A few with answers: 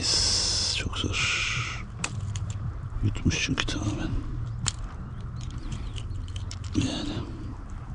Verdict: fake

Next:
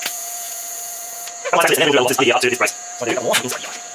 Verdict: fake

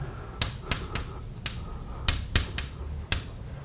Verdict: real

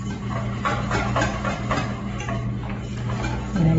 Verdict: real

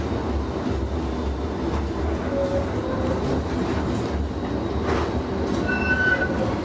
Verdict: real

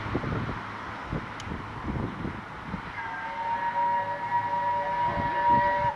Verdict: real